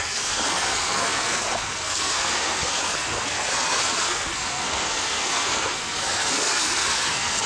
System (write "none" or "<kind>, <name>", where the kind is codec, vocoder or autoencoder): codec, SNAC